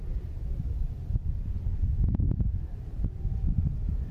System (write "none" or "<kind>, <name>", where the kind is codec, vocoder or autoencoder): vocoder, BigVGAN v2